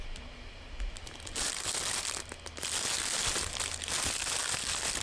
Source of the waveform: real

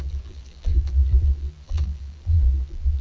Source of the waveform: fake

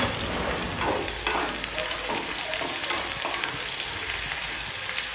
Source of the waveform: fake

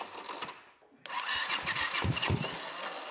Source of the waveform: real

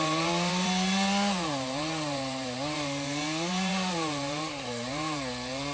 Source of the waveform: fake